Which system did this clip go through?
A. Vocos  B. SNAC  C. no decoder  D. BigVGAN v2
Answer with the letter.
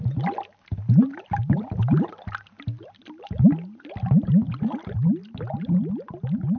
C